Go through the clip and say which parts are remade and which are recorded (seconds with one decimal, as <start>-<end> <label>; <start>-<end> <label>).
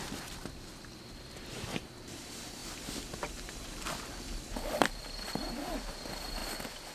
0.0-6.9 recorded